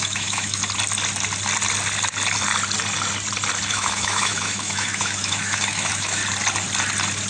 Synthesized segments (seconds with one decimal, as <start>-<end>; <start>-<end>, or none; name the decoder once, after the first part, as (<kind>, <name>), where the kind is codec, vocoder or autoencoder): 0.0-0.6 (autoencoder, DAC-VAE); 3.7-6.2

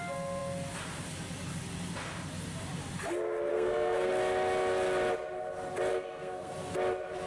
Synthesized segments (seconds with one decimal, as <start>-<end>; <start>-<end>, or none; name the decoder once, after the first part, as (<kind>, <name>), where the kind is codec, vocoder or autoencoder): 3.5-4.1 (codec, SNAC); 5.9-6.5